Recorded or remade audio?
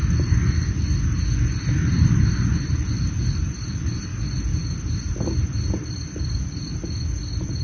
recorded